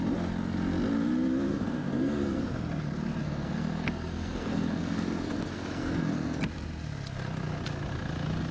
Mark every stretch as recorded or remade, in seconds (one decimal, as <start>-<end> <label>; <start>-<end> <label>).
0.0-1.5 recorded; 1.5-2.4 remade; 2.4-3.2 recorded; 3.2-6.4 remade; 6.4-8.5 recorded